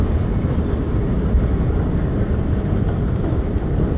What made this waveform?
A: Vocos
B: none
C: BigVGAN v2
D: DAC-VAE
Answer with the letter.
B